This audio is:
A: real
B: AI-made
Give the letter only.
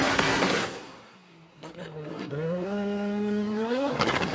B